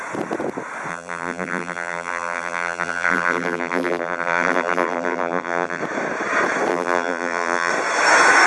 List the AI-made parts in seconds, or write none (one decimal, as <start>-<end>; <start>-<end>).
0.9-5.8; 6.7-7.7